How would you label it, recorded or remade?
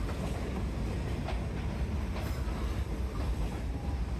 recorded